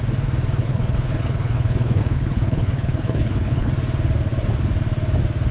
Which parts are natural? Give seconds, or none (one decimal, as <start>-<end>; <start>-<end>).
0.0-0.6; 3.7-5.5